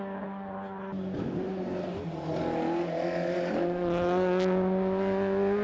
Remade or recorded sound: recorded